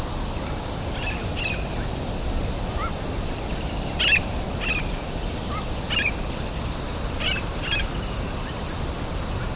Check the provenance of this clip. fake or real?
real